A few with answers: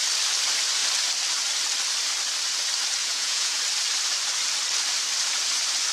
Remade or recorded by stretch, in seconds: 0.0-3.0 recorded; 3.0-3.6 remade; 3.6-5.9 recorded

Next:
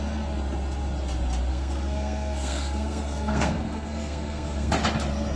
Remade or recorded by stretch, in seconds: 0.0-1.5 recorded; 1.5-4.7 remade; 4.7-5.4 recorded

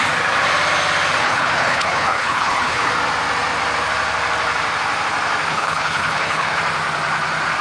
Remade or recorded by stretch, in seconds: 0.0-1.2 recorded; 1.2-2.9 remade; 2.9-5.5 recorded; 5.5-6.6 remade; 6.6-7.6 recorded

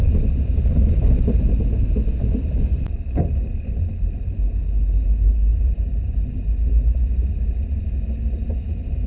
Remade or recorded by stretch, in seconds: 0.0-2.2 remade; 2.2-3.5 recorded; 3.5-4.6 remade; 4.6-5.5 recorded; 5.5-6.1 remade; 6.1-9.1 recorded

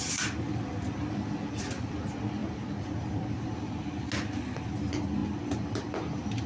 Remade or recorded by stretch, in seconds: 0.0-6.5 recorded

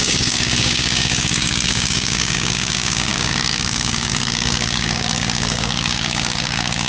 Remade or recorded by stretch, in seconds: 0.0-6.9 remade

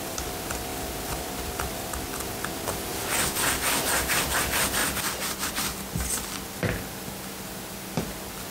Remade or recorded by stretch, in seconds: 0.0-8.5 recorded

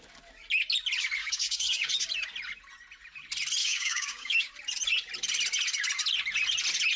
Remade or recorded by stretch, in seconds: 0.0-1.2 recorded; 1.2-1.9 remade; 1.9-3.6 recorded; 3.6-4.5 remade; 4.5-7.0 recorded